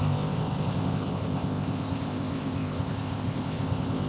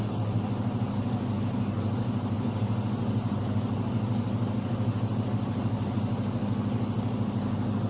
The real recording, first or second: second